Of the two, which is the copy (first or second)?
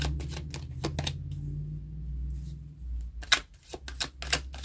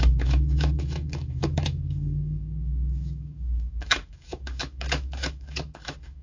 second